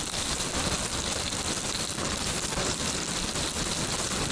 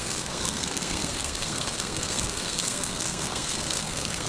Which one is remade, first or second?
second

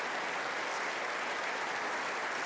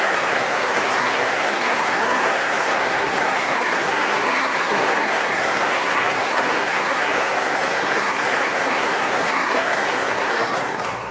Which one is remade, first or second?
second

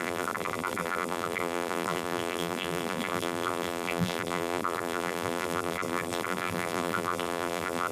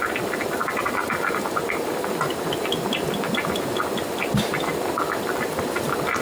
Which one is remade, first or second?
first